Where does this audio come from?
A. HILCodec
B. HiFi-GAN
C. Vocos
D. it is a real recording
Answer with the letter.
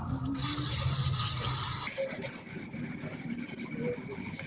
D